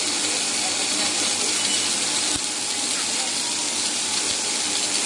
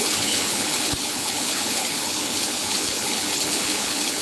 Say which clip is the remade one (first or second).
second